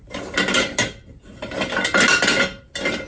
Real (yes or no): yes